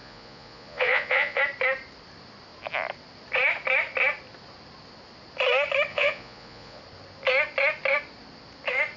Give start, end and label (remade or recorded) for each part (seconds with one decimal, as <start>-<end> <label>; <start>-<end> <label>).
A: 0.0-1.4 remade; 1.4-5.9 recorded; 5.9-6.8 remade; 6.8-9.0 recorded